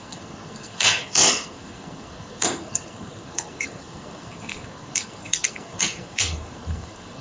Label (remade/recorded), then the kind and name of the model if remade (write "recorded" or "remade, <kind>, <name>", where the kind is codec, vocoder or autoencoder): remade, codec, SNAC